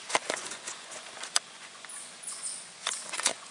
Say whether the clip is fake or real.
fake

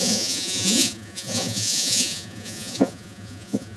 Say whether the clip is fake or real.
fake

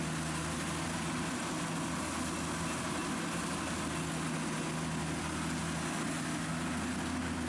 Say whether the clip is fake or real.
real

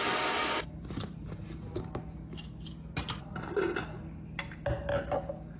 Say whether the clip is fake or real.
real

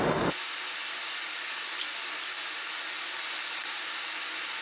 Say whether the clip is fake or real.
real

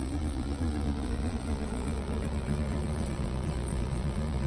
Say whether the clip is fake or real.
fake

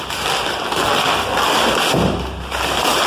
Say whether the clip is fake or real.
real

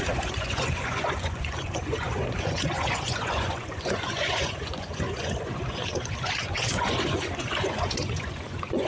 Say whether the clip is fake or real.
fake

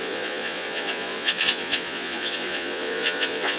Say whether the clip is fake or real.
fake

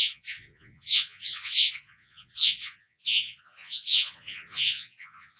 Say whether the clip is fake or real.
fake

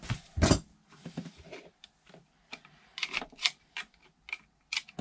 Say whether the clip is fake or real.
real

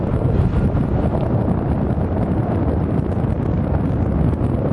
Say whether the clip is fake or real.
real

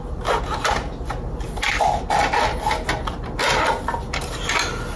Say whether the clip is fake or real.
real